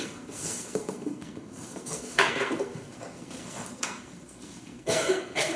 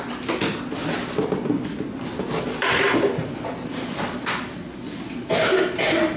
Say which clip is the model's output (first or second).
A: first